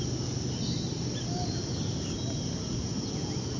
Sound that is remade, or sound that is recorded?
recorded